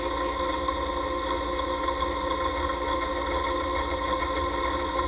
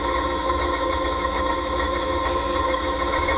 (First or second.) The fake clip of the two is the second